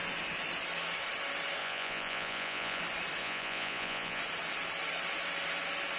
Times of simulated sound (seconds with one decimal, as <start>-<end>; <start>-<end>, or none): 1.6-2.8; 3.2-4.2